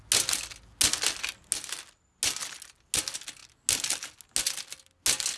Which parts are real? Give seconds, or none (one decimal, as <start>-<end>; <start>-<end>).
0.0-5.4